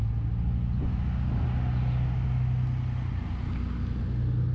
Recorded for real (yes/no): yes